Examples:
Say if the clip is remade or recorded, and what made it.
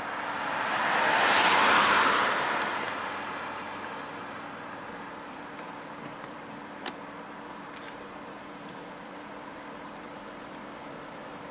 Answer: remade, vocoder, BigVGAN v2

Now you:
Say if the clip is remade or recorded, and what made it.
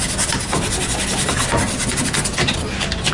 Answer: recorded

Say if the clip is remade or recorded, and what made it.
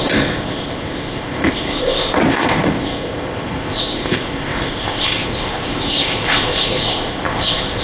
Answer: remade, codec, ZipCodec